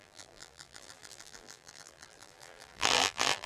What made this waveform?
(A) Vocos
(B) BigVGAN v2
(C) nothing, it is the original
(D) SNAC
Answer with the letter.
B